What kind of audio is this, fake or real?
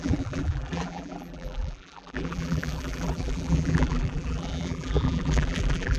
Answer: fake